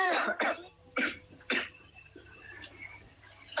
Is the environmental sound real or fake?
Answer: fake